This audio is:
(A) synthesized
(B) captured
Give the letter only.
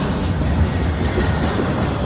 B